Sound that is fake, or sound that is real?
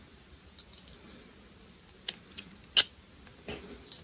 real